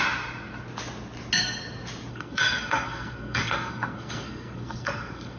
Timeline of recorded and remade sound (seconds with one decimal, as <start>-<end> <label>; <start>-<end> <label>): 0.0-2.1 recorded; 2.1-5.4 remade